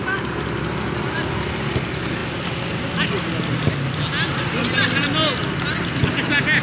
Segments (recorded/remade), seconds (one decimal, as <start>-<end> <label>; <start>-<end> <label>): 0.0-6.6 recorded